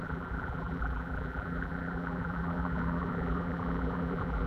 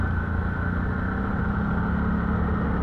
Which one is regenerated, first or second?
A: first